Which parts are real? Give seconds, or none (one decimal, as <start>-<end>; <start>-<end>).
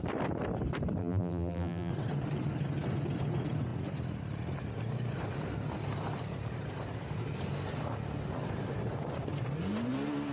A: 0.0-1.0; 1.9-10.3